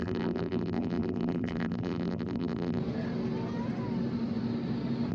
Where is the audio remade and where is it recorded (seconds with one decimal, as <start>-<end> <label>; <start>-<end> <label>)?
0.0-2.8 remade; 2.8-5.1 recorded